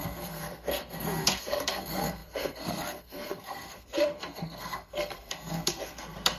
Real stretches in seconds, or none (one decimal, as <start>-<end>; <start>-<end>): none